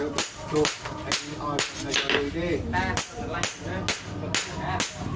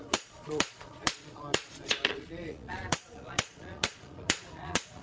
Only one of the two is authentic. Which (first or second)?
first